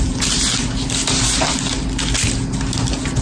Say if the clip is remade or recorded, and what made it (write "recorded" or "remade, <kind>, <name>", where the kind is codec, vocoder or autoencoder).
recorded